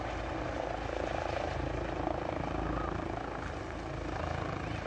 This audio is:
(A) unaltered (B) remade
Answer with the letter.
A